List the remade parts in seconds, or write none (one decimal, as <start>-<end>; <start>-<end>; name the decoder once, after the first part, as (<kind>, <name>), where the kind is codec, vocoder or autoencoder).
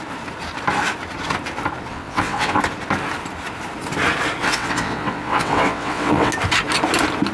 1.9-2.6 (vocoder, WaveNeXt); 4.4-6.3